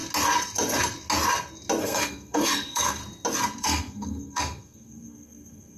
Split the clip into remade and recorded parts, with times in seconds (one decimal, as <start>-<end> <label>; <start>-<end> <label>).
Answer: 0.0-1.8 recorded; 1.8-3.0 remade; 3.0-3.6 recorded; 3.6-5.8 remade